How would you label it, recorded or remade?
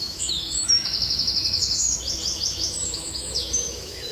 remade